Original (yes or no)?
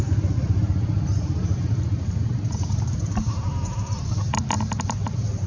no